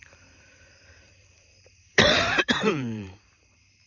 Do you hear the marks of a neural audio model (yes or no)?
yes